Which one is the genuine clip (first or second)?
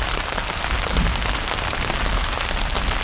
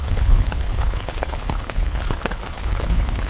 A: first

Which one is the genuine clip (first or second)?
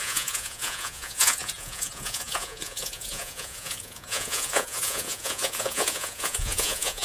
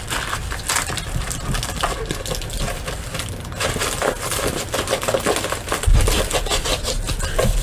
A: second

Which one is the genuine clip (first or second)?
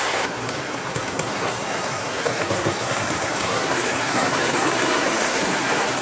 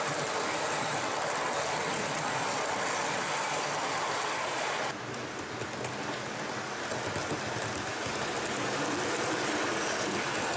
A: second